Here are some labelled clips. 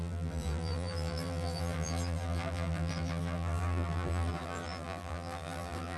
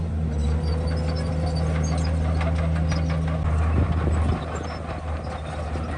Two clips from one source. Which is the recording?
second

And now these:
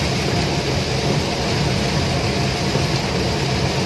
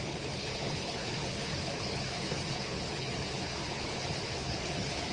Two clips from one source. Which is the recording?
first